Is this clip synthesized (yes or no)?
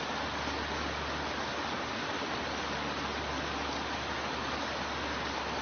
no